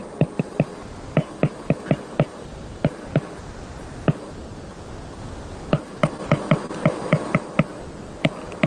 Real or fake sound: real